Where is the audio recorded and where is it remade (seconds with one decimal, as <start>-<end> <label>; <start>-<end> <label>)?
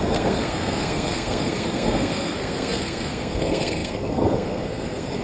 0.0-5.2 remade